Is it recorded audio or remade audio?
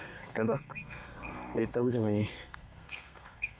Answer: remade